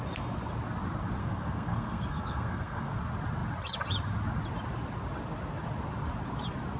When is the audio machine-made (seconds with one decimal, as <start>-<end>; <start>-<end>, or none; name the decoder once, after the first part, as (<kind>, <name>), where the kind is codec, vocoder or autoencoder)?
1.2-3.0 (codec, SNAC)